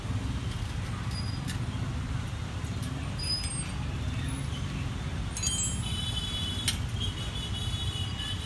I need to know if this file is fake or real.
real